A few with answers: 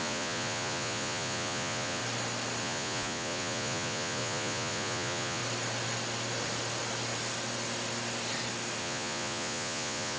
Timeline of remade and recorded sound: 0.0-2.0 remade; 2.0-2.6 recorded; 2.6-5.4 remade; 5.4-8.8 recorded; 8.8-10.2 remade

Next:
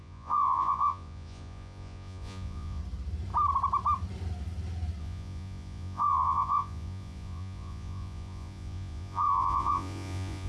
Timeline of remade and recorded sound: 0.0-2.8 remade; 2.8-5.0 recorded; 5.0-10.5 remade

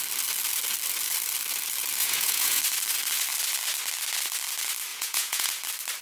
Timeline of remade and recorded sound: 0.0-2.0 recorded; 2.0-2.6 remade; 2.6-4.9 recorded; 4.9-5.5 remade; 5.5-6.0 recorded

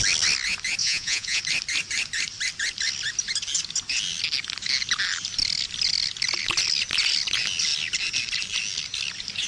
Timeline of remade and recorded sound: 0.0-0.8 recorded; 0.8-1.4 remade; 1.4-9.5 recorded

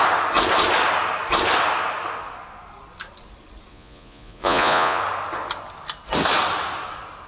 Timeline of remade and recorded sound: 0.0-3.7 recorded; 3.7-5.0 remade; 5.0-7.3 recorded

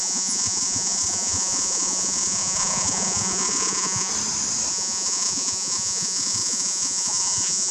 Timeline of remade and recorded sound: 0.0-4.1 remade; 4.1-4.7 recorded; 4.7-7.7 remade

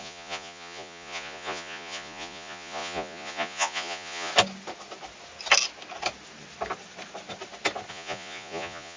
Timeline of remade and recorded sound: 0.0-4.3 remade; 4.3-7.9 recorded; 7.9-9.0 remade